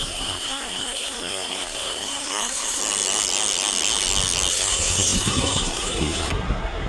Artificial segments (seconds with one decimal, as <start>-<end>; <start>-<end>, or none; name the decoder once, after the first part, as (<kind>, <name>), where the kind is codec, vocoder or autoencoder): 0.0-2.8 (codec, SNAC); 4.5-6.9